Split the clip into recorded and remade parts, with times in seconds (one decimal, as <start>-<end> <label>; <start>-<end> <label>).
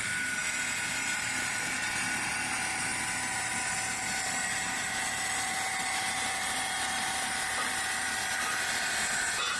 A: 0.0-0.4 recorded; 0.4-0.9 remade; 0.9-9.6 recorded